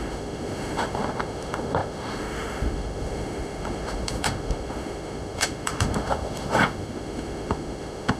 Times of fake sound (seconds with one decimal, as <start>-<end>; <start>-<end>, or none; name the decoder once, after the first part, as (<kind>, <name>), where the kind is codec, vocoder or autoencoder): 0.0-8.2 (autoencoder, DAC-VAE)